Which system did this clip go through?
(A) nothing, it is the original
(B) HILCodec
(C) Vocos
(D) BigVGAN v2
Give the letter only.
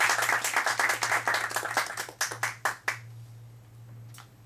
A